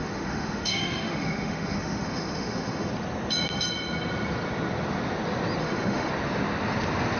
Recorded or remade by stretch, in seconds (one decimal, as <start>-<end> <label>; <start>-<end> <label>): 0.0-2.9 remade; 2.9-5.6 recorded; 5.6-6.1 remade; 6.1-7.2 recorded